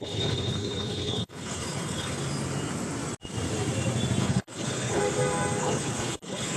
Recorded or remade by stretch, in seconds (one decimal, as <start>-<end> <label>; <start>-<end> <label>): 0.0-2.2 remade; 2.2-4.2 recorded; 4.2-5.0 remade; 5.0-5.6 recorded; 5.6-6.6 remade